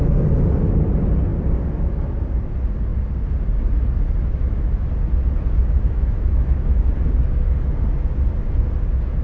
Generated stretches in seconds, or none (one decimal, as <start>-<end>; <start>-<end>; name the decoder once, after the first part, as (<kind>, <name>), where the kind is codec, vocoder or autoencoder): 5.6-6.9 (autoencoder, DAC-VAE)